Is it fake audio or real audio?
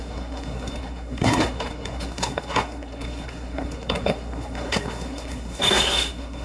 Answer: fake